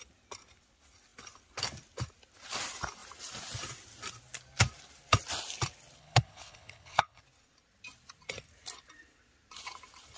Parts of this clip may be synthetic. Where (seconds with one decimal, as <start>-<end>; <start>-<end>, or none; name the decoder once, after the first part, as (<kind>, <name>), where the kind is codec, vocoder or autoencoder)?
6.0-7.2 (codec, HILCodec)